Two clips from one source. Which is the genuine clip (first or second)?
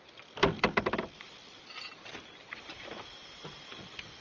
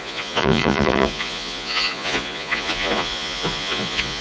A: first